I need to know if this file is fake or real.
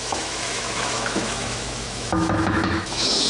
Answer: fake